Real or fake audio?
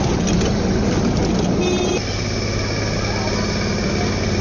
real